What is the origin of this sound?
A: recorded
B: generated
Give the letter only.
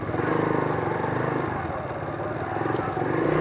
A